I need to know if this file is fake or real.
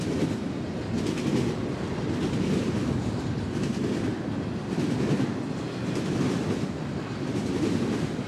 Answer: fake